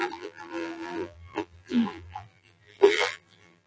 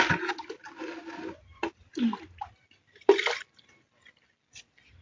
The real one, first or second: second